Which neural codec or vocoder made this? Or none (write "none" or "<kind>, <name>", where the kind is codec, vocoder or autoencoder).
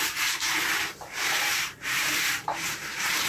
vocoder, BigVGAN v2